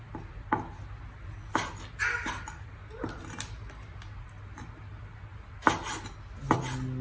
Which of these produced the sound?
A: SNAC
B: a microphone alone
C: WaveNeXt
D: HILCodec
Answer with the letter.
B